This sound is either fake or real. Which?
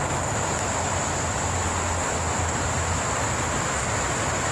real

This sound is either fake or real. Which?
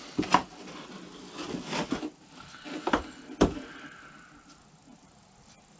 real